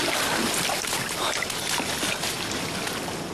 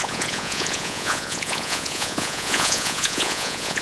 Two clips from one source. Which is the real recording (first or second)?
first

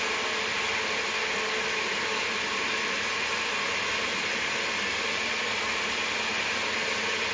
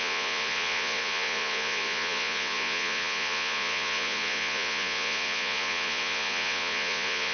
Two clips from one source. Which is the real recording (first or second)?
first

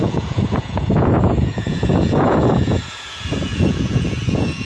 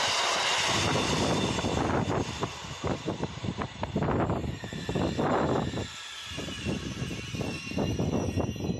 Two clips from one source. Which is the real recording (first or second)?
second